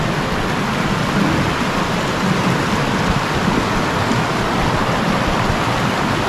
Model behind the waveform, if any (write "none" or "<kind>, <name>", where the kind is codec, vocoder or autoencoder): none